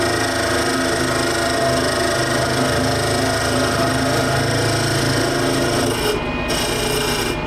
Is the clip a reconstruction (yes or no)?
no